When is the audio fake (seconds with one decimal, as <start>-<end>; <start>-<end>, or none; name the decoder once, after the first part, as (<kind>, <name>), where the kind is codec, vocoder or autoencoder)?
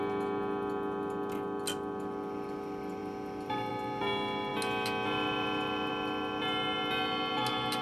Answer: none